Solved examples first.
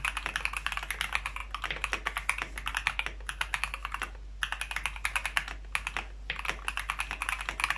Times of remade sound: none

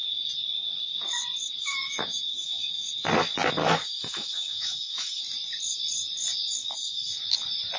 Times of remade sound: 1.6-2.9 (autoencoder, DAC-VAE); 3.6-5.2; 6.6-7.2

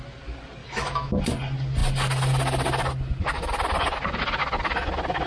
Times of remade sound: 0.6-1.2 (autoencoder, DAC-VAE)

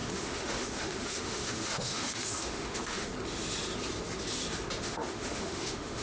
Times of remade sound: 0.0-3.1 (autoencoder, DAC-VAE); 4.8-6.0

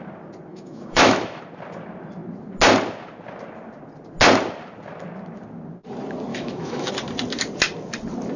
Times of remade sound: 0.5-1.4 (autoencoder, DAC-VAE); 6.3-6.9

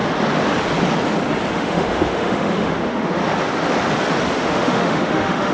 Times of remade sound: 1.5-3.2 (autoencoder, DAC-VAE); 4.3-5.5